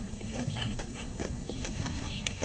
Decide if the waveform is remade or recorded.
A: remade